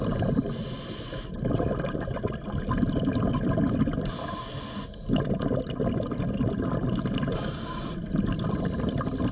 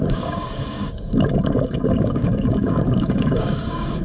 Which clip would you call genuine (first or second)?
first